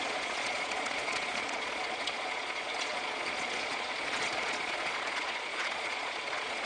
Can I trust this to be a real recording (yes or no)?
no